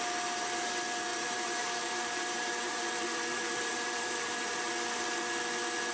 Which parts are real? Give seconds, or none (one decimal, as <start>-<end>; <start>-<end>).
0.0-1.1; 4.6-5.9